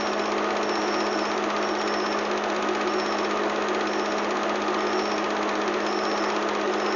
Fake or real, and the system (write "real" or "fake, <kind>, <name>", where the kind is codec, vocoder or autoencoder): real